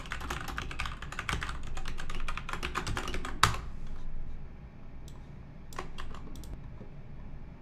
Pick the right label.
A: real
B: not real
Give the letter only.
A